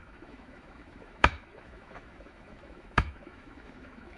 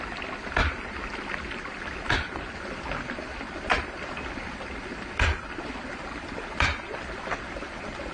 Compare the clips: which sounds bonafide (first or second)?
second